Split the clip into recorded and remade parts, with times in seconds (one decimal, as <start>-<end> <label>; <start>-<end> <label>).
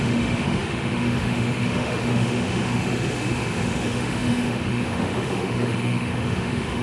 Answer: 0.0-6.8 remade